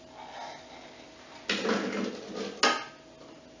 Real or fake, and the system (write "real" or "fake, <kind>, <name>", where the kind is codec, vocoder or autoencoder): real